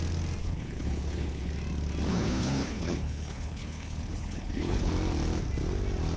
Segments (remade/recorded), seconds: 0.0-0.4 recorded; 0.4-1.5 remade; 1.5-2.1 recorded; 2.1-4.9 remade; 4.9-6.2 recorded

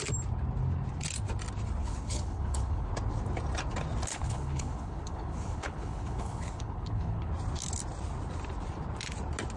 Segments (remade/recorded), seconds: 0.0-1.8 recorded; 1.8-2.9 remade; 2.9-4.1 recorded; 4.1-7.3 remade; 7.3-9.6 recorded

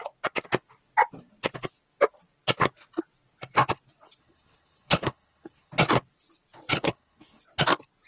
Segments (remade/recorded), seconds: 0.0-4.2 recorded; 4.2-5.7 remade; 5.7-6.7 recorded; 6.7-7.4 remade; 7.4-8.1 recorded